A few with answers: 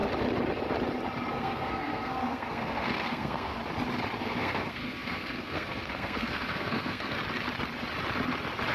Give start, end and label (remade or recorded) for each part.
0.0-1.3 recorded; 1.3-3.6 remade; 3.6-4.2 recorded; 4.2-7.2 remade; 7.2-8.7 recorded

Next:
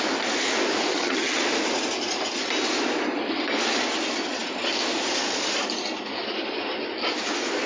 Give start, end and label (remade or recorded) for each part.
0.0-0.9 recorded; 0.9-1.4 remade; 1.4-7.7 recorded

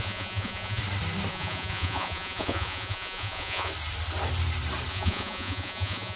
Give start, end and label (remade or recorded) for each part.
0.0-0.8 remade; 0.8-1.3 recorded; 1.3-3.7 remade; 3.7-4.9 recorded; 4.9-6.2 remade

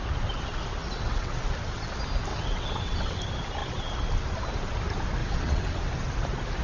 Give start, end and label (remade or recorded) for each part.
0.0-0.8 recorded; 0.8-1.4 remade; 1.4-2.3 recorded; 2.3-3.2 remade; 3.2-5.2 recorded; 5.2-5.8 remade; 5.8-6.6 recorded

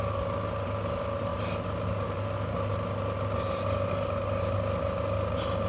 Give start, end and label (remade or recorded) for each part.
0.0-5.7 recorded

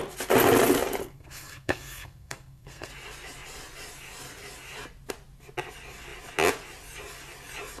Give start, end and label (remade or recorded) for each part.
0.0-1.0 recorded; 1.0-2.9 remade; 2.9-7.8 recorded

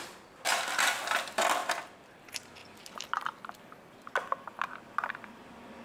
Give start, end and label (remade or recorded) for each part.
0.0-1.6 recorded; 1.6-2.2 remade; 2.2-2.6 recorded; 2.6-4.1 remade; 4.1-5.8 recorded